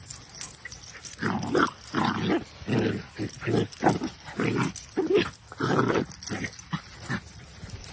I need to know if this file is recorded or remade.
recorded